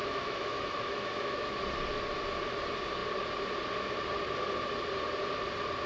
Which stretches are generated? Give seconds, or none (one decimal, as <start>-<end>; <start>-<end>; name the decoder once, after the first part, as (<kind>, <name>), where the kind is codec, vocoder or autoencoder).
0.0-1.6 (autoencoder, DAC-VAE)